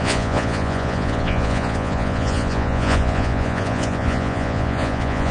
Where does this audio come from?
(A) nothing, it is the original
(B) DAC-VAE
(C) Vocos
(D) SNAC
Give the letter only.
C